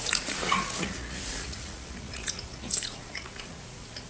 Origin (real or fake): fake